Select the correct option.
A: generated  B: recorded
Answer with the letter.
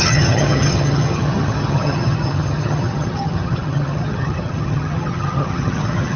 A